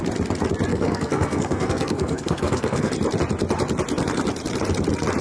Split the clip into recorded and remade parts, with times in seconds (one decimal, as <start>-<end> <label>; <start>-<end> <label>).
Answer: 0.0-0.7 recorded; 0.7-2.9 remade; 2.9-5.2 recorded